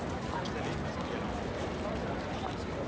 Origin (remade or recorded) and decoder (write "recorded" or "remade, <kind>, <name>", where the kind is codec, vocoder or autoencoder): recorded